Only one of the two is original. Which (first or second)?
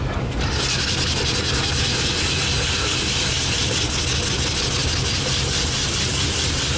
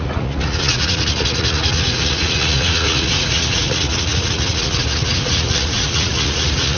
first